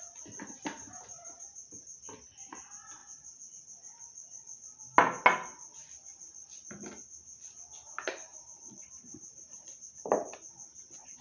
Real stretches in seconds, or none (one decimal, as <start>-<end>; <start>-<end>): 0.0-3.0; 3.5-8.3; 9.9-11.2